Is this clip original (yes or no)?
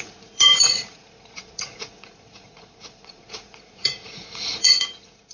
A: no